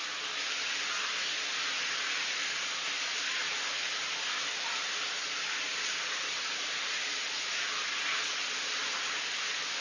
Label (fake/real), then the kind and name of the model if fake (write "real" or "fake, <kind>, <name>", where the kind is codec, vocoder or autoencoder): real